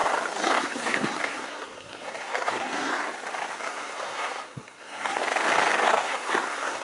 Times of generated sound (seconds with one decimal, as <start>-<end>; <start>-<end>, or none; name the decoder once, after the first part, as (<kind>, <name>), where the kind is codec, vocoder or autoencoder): 0.6-2.9 (codec, SNAC); 3.6-5.2; 5.9-6.8